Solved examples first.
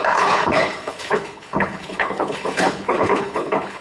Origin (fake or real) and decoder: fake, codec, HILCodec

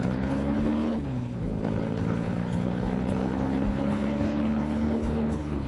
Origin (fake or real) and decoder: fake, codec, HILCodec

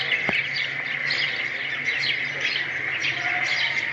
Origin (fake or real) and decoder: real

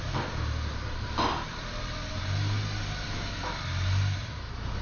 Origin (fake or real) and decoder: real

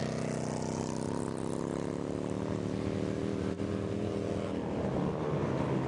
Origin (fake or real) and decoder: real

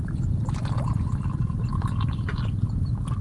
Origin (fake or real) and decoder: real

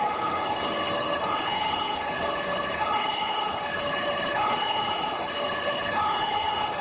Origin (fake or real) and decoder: fake, codec, HILCodec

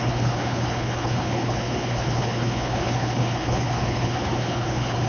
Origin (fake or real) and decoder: fake, codec, HILCodec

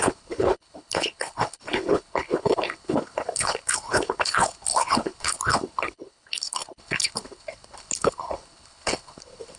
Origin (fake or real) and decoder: fake, codec, HILCodec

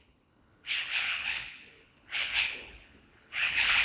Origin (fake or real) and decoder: fake, codec, HILCodec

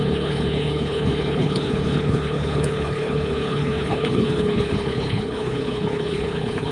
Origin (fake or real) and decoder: fake, codec, HILCodec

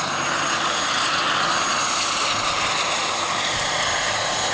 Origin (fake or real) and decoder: real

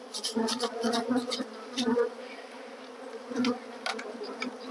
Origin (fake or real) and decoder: real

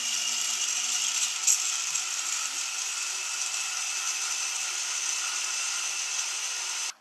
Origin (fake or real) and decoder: real